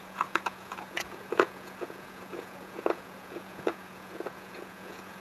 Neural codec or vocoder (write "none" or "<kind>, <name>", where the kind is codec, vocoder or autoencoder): vocoder, Vocos